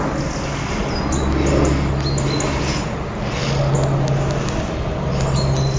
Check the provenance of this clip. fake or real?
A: real